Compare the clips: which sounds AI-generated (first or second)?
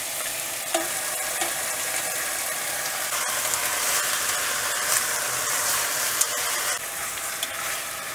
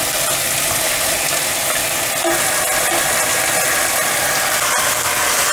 first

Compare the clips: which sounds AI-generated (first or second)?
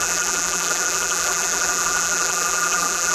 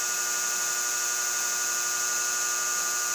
first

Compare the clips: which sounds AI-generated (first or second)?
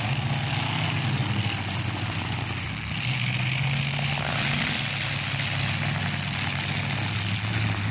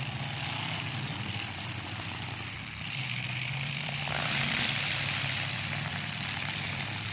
second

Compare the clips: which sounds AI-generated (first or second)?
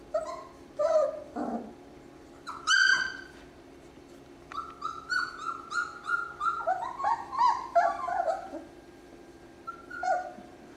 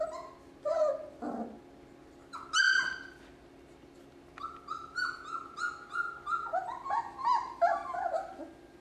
first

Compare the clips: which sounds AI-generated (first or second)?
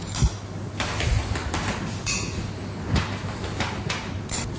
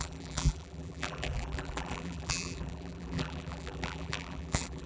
second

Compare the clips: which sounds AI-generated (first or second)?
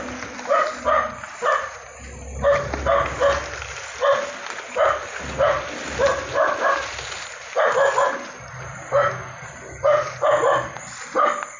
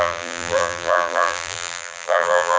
second